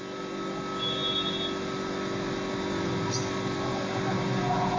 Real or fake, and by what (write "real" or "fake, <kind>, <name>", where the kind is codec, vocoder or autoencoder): real